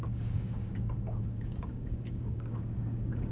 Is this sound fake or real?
fake